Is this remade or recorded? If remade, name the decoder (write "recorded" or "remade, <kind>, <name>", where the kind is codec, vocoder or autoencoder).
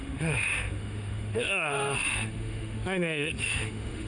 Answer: remade, autoencoder, DAC-VAE